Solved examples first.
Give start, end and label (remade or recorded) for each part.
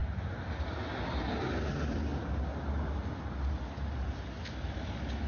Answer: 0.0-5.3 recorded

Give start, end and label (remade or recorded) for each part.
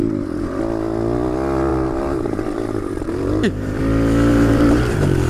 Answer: 0.0-0.6 remade; 0.6-1.7 recorded; 1.7-3.8 remade; 3.8-4.3 recorded; 4.3-4.8 remade; 4.8-5.3 recorded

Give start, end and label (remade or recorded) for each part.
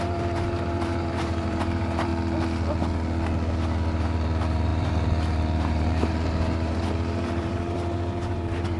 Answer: 0.0-2.1 remade; 2.1-3.9 recorded; 3.9-8.8 remade